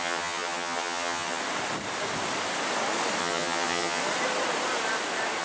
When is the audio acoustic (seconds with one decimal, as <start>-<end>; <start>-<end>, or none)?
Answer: 1.4-3.2; 4.0-5.4